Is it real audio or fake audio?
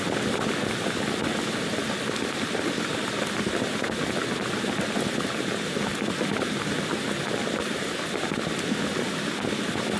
real